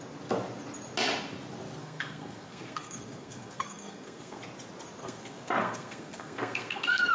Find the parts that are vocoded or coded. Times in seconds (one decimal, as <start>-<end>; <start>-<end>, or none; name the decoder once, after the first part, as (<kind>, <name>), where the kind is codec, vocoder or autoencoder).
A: 1.8-4.4 (codec, SNAC); 5.0-7.1